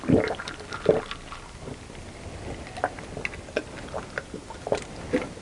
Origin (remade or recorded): recorded